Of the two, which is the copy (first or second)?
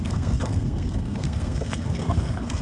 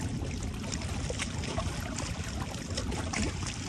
first